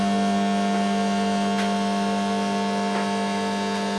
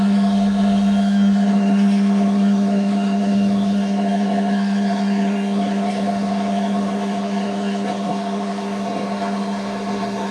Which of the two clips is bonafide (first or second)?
first